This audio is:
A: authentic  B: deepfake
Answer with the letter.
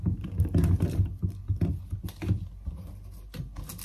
A